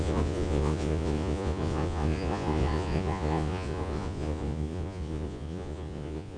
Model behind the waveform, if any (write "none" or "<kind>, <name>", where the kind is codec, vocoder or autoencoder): vocoder, Vocos